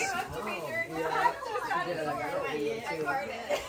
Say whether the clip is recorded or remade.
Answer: recorded